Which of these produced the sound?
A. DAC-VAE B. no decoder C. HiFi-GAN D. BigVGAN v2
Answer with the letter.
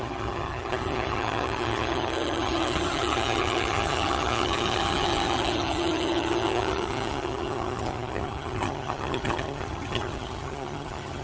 C